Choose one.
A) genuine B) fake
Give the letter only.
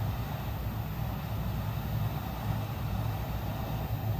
A